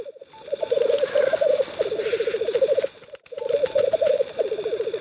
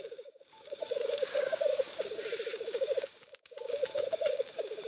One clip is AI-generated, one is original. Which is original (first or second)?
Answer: first